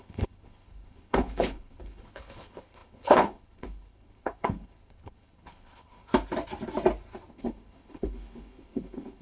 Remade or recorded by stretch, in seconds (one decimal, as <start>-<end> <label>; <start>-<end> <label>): 0.0-6.1 remade; 6.1-7.3 recorded; 7.3-9.2 remade